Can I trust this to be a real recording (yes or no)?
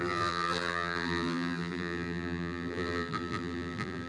no